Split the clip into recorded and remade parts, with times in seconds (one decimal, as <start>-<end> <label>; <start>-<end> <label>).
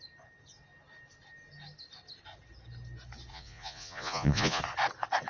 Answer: 0.0-3.3 recorded; 3.3-4.6 remade; 4.6-5.3 recorded